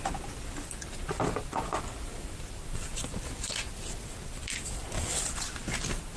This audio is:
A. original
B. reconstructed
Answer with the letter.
A